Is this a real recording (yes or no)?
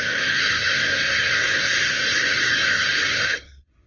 no